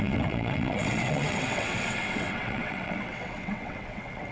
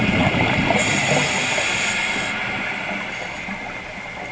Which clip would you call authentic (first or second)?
second